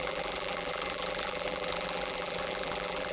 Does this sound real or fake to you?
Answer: fake